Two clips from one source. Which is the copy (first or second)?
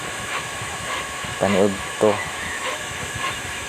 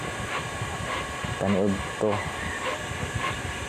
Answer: first